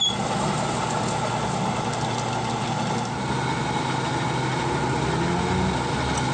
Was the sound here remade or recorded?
recorded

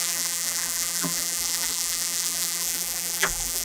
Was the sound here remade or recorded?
remade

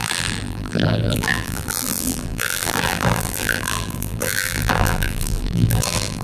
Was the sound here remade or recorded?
remade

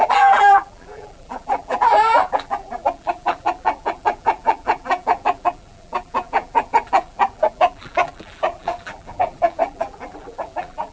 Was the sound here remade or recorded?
remade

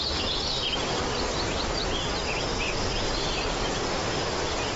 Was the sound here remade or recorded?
recorded